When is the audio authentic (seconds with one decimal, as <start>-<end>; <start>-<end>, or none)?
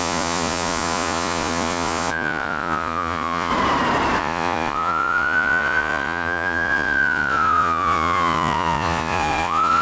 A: 3.5-4.2